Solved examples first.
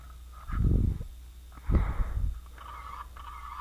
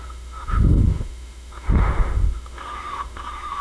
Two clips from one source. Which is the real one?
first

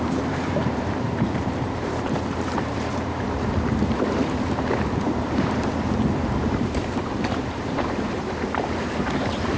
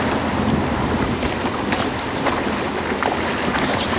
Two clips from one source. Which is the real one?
second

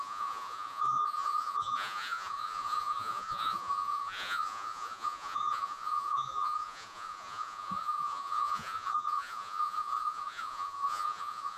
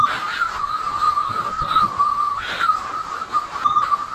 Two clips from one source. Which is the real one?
second